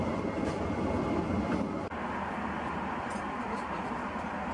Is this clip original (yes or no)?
yes